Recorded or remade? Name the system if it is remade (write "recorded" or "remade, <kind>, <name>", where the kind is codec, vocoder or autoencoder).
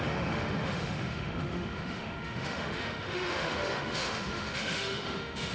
remade, autoencoder, DAC-VAE